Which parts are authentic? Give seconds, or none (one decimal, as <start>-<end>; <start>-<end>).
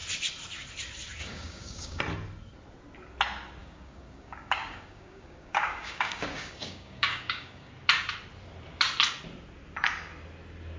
0.0-1.2; 2.0-3.6; 7.7-10.8